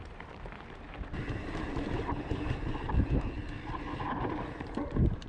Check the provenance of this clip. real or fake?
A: fake